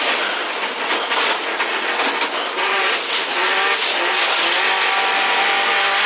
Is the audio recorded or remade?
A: recorded